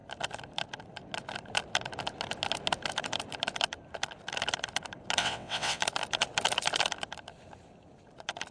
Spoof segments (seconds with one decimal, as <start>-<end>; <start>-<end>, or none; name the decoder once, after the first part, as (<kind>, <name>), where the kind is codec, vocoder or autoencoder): 5.2-5.8 (vocoder, WaveNeXt)